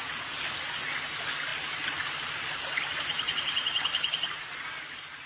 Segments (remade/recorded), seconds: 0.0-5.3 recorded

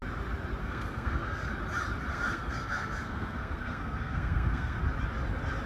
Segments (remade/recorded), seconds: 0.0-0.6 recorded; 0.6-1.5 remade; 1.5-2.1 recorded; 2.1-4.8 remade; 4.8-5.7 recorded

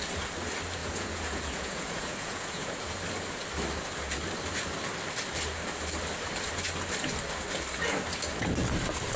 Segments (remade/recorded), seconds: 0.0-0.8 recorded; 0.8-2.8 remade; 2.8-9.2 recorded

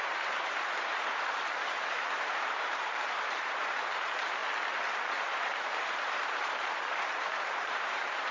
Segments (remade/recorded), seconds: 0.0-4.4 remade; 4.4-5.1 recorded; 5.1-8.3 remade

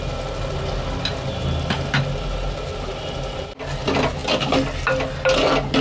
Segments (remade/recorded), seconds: 0.0-5.8 recorded

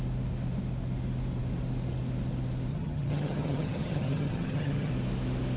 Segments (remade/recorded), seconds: 0.0-2.7 recorded; 2.7-4.9 remade; 4.9-5.6 recorded

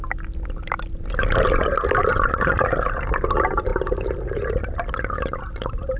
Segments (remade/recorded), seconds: 0.0-6.0 recorded